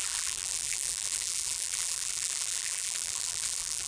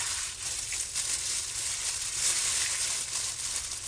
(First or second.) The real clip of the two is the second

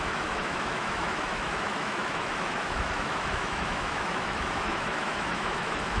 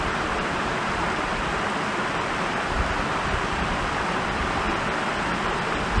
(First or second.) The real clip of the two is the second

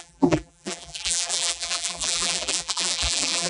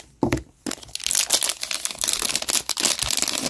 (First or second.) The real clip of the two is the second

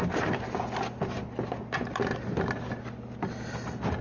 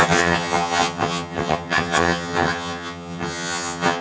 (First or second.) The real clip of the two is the first